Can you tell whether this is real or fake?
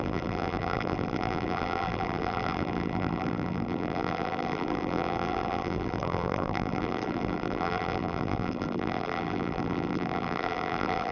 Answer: fake